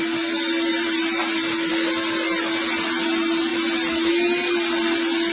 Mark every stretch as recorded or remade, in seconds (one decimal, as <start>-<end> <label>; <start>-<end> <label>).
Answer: 0.0-0.7 recorded; 0.7-1.7 remade; 1.7-3.5 recorded; 3.5-4.1 remade; 4.1-5.3 recorded